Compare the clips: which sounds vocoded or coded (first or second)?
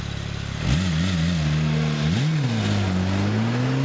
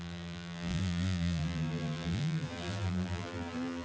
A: second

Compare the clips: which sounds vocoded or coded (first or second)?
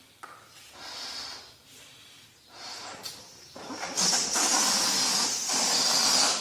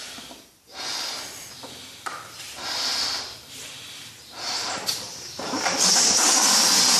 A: second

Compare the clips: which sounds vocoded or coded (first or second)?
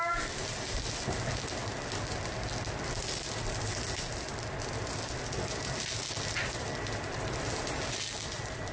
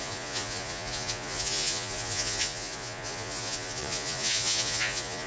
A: second